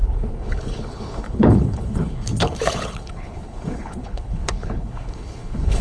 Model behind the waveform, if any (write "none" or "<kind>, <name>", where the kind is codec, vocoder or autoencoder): codec, HILCodec